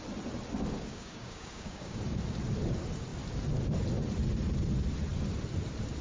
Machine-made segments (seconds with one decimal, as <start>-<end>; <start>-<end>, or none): 0.9-2.0